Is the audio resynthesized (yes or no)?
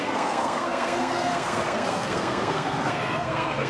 yes